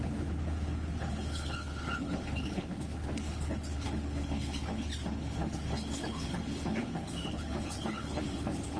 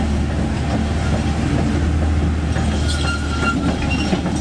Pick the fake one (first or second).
first